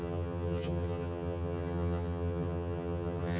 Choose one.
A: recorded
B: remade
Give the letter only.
B